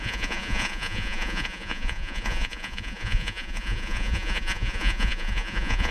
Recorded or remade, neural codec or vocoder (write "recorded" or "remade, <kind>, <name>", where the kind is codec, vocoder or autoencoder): remade, vocoder, Vocos